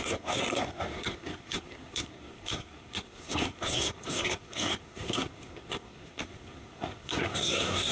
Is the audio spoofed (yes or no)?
yes